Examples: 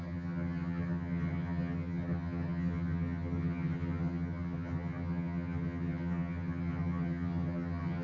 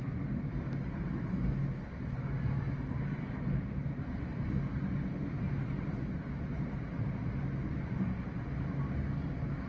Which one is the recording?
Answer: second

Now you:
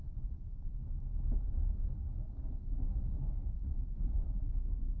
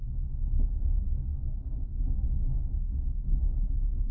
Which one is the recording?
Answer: second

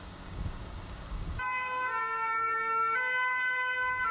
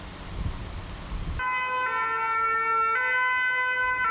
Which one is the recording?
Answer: second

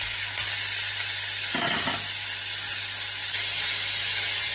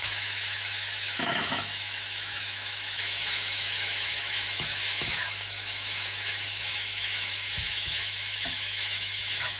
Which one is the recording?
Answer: first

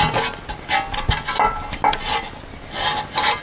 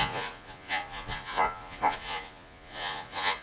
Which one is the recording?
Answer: first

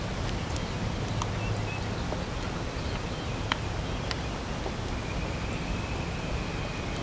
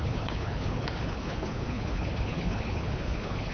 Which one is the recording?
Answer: first